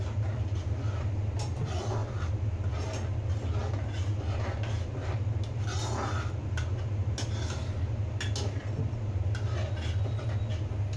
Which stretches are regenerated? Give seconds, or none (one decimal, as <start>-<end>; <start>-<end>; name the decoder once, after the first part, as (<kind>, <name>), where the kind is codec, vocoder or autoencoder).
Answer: none